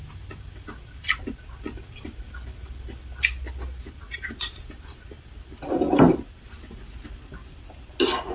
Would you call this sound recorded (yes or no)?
yes